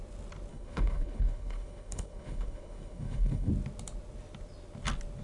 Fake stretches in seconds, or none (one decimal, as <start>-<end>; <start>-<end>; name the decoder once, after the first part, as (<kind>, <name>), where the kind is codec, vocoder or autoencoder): 0.5-3.5 (codec, HILCodec)